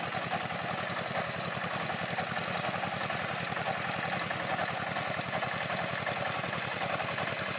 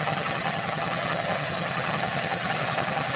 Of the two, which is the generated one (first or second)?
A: second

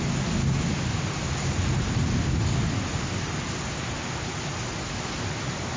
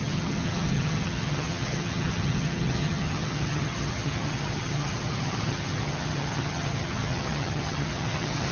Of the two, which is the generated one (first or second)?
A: second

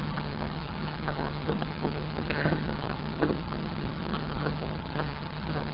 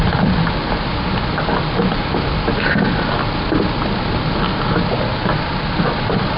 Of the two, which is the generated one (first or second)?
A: first